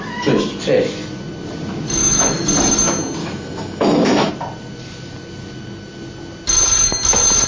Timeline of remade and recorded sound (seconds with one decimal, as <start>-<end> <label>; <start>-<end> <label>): 0.0-2.0 recorded; 2.0-2.5 remade; 2.5-3.2 recorded; 3.2-4.3 remade; 4.3-7.5 recorded